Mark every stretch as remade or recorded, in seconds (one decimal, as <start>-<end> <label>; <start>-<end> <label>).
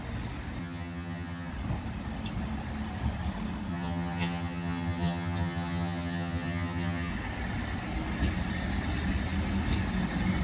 0.0-0.6 recorded; 0.6-1.5 remade; 1.5-3.7 recorded; 3.7-7.1 remade; 7.1-10.4 recorded